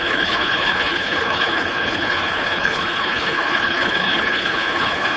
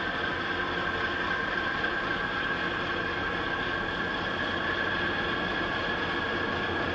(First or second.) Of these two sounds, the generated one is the first